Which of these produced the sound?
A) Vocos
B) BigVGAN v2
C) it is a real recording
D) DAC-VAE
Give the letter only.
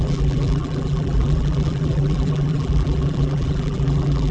B